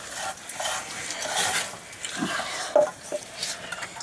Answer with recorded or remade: recorded